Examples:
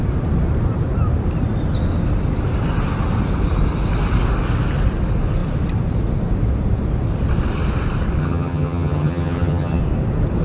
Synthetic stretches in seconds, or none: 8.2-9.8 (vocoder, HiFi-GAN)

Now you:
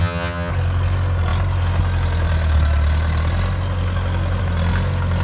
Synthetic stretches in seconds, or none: 0.0-0.5 (vocoder, HiFi-GAN)